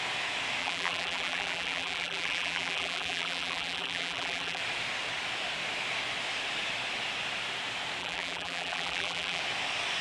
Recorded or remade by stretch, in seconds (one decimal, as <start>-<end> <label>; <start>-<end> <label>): 0.0-0.6 recorded; 0.6-4.6 remade; 4.6-8.0 recorded; 8.0-9.4 remade; 9.4-10.0 recorded